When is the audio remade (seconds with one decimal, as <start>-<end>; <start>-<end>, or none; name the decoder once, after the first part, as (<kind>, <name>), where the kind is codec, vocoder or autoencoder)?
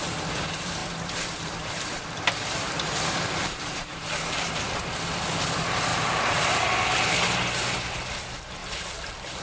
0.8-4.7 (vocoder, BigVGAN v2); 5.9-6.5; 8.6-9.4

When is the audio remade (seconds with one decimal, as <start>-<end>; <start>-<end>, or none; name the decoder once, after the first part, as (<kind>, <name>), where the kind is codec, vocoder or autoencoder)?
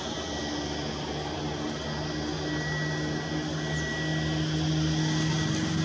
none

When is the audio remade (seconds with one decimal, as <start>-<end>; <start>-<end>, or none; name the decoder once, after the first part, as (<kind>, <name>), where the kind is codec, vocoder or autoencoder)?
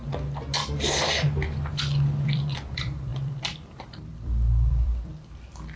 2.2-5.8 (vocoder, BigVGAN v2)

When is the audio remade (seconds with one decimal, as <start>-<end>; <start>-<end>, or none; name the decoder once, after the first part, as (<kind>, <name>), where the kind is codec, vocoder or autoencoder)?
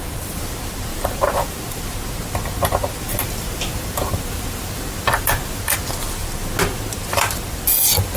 0.9-1.8 (vocoder, BigVGAN v2); 3.0-5.6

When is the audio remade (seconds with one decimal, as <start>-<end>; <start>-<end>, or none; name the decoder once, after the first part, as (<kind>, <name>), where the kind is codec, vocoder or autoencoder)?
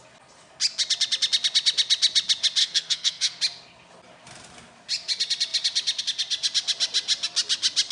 2.6-3.4 (codec, SNAC)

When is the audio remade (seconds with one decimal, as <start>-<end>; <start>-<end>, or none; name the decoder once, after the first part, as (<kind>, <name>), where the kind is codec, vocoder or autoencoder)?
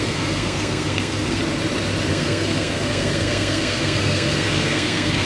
0.0-1.4 (codec, SNAC); 2.1-5.3